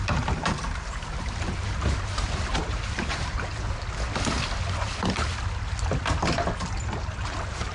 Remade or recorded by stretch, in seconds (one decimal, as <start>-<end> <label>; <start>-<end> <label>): 0.0-3.5 remade; 3.5-7.0 recorded; 7.0-7.7 remade